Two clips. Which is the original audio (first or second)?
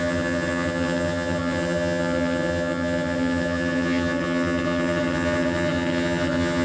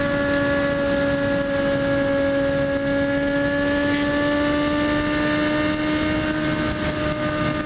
second